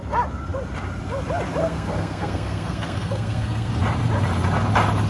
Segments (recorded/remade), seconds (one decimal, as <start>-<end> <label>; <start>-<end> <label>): 0.0-1.6 recorded; 1.6-3.7 remade; 3.7-5.1 recorded